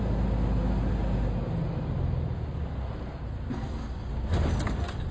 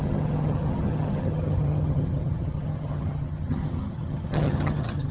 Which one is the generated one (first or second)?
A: second